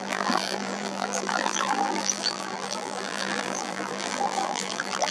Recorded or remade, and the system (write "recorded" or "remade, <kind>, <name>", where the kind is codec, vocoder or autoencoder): remade, vocoder, BigVGAN v2